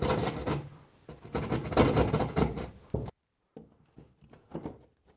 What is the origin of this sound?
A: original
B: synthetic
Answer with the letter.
B